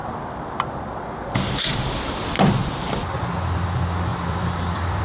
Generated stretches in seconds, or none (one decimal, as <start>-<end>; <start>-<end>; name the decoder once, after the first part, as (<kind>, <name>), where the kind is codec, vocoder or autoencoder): 0.0-2.0 (vocoder, BigVGAN v2); 2.6-3.1; 4.1-5.0